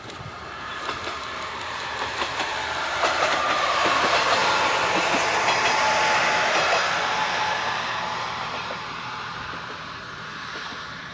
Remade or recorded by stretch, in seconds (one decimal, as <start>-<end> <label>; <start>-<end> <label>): 0.0-4.4 remade; 4.4-7.1 recorded; 7.1-11.1 remade